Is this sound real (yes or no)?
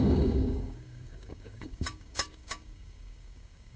no